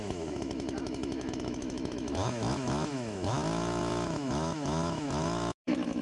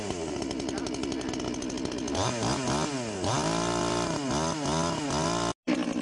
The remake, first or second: first